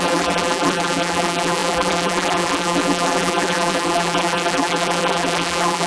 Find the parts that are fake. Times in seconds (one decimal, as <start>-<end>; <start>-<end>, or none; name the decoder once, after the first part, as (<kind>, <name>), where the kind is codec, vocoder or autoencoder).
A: 0.0-5.9 (vocoder, BigVGAN v2)